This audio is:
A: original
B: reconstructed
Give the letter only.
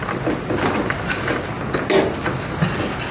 A